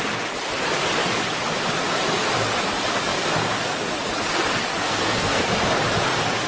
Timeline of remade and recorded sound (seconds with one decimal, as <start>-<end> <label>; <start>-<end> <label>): 0.0-4.8 recorded; 4.8-5.5 remade; 5.5-6.5 recorded